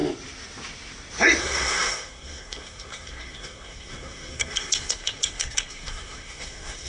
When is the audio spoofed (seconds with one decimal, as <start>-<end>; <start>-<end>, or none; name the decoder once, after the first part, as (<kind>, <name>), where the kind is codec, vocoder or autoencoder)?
1.4-6.9 (codec, SNAC)